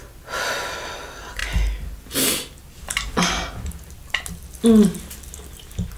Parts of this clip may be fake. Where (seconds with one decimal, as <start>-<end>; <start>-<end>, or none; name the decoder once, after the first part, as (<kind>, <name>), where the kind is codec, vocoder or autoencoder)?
none